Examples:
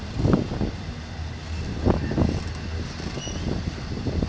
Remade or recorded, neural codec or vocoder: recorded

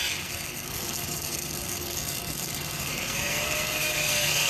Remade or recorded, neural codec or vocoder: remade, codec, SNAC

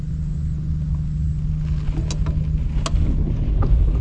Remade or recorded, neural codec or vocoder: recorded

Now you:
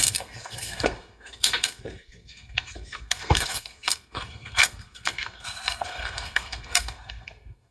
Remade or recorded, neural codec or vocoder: remade, codec, SNAC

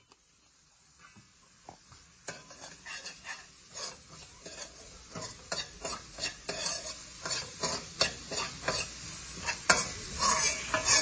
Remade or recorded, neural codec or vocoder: recorded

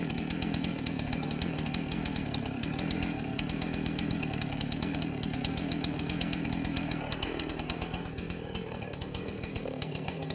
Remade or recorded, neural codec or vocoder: remade, codec, SNAC